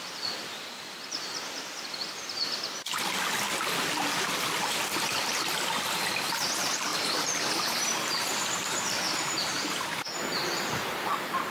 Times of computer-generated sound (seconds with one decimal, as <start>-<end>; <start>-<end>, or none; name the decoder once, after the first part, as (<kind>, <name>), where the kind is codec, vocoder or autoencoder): none